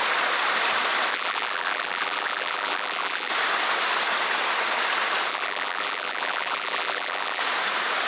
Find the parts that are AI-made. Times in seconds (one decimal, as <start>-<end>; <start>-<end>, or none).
1.1-3.3; 5.3-7.4